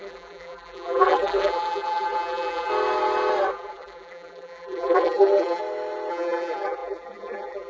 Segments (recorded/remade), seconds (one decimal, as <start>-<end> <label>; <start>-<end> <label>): 0.0-2.7 remade; 2.7-3.5 recorded; 3.5-5.6 remade; 5.6-6.1 recorded; 6.1-7.7 remade